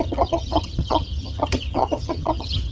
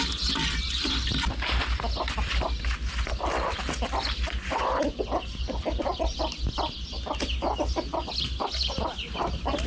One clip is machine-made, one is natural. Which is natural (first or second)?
second